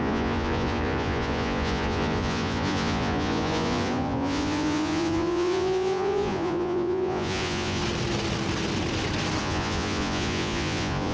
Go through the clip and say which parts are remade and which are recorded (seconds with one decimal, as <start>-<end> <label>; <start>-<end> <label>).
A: 0.0-7.8 remade; 7.8-9.4 recorded; 9.4-11.1 remade